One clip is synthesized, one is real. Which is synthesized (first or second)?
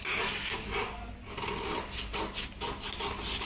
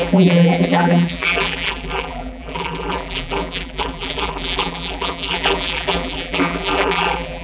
second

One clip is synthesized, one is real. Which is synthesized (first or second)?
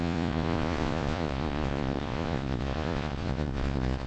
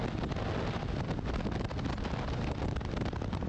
first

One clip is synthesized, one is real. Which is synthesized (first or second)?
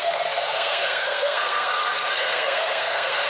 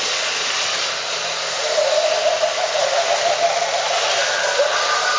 first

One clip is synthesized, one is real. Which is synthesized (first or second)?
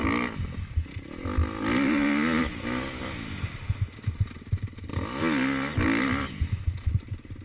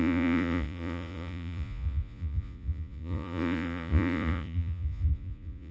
second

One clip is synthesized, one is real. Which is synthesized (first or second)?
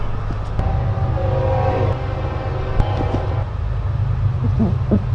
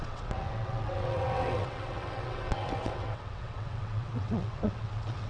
second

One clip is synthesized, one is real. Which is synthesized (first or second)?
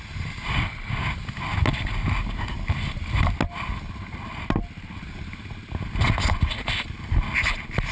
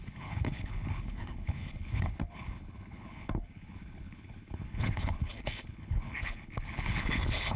second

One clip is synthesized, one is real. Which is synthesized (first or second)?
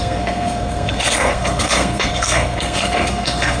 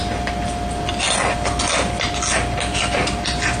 first